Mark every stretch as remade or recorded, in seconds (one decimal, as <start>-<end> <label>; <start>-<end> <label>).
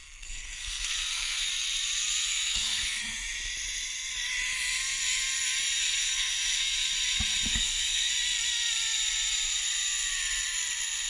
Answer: 0.0-1.5 remade; 1.5-2.2 recorded; 2.2-3.0 remade; 3.0-6.0 recorded; 6.0-6.6 remade; 6.6-7.5 recorded; 7.5-8.1 remade; 8.1-11.1 recorded